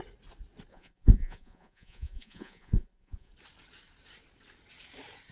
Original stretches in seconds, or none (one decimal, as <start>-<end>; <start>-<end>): 0.0-0.7; 3.3-5.3